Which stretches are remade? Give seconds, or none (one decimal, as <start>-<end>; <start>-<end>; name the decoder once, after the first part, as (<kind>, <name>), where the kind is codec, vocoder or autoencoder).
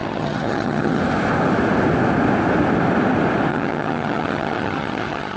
0.0-1.0 (vocoder, HiFi-GAN); 3.5-5.4